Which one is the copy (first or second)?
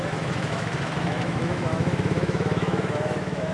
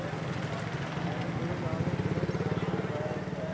first